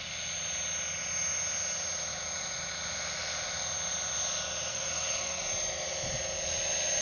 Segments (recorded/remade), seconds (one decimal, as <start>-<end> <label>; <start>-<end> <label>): 0.0-4.7 recorded; 4.7-5.4 remade; 5.4-7.0 recorded

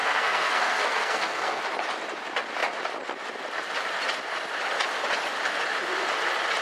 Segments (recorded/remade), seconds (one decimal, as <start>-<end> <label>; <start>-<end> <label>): 0.0-1.6 remade; 1.6-6.6 recorded

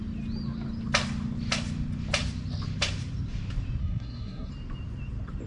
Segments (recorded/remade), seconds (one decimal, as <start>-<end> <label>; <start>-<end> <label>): 0.0-3.8 recorded; 3.8-4.5 remade; 4.5-5.5 recorded

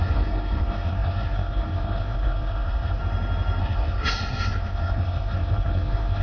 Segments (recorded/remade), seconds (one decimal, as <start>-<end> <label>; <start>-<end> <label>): 0.0-3.0 remade; 3.0-3.6 recorded; 3.6-6.2 remade

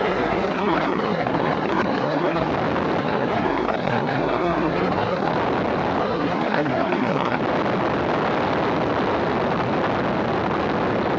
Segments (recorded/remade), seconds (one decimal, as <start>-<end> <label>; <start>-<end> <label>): 0.0-2.5 remade; 2.5-3.0 recorded; 3.0-5.3 remade; 5.3-6.0 recorded; 6.0-7.4 remade; 7.4-11.2 recorded